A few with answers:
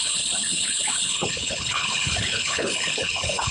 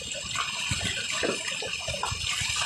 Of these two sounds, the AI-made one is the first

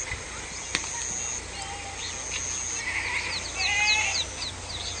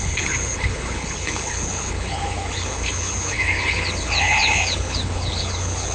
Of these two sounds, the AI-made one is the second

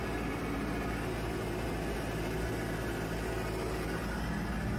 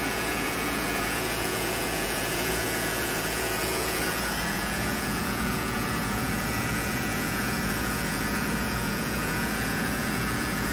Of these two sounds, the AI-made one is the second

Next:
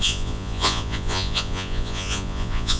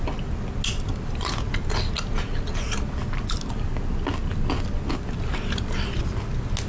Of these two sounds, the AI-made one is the first